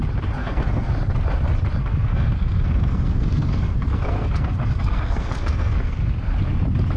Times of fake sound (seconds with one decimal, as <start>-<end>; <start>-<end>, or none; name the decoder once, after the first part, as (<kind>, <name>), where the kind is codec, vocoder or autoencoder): 0.4-0.9 (codec, SNAC); 1.8-6.0